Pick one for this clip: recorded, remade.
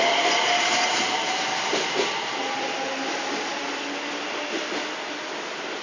recorded